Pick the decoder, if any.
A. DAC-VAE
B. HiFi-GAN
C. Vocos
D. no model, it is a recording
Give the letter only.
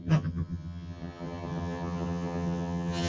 B